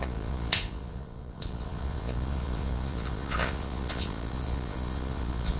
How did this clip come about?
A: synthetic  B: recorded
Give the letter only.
A